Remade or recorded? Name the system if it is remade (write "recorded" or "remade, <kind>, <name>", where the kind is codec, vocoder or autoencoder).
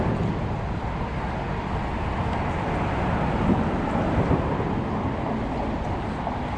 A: recorded